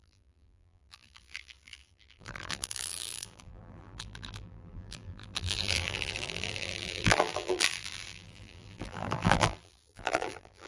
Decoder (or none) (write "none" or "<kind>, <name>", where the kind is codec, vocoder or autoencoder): vocoder, BigVGAN v2